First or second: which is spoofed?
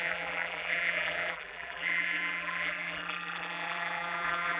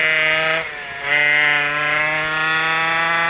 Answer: first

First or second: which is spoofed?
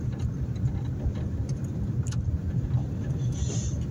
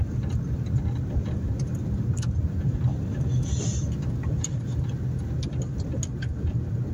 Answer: first